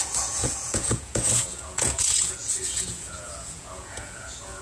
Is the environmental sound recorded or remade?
remade